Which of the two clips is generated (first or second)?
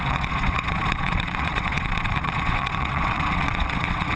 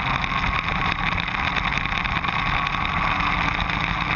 first